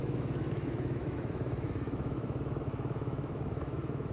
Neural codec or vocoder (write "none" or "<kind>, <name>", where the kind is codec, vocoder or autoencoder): autoencoder, DAC-VAE